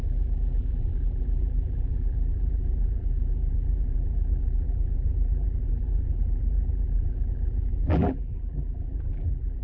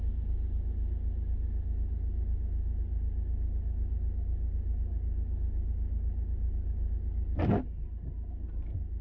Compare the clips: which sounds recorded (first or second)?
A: second